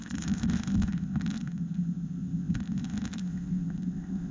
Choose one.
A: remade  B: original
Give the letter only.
A